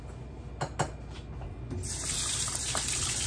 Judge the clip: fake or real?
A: real